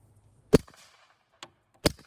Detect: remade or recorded recorded